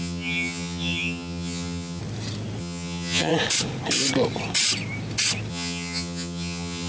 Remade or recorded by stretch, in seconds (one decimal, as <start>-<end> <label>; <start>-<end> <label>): 0.0-2.0 remade; 2.0-2.6 recorded; 2.6-3.3 remade; 3.3-5.5 recorded; 5.5-6.9 remade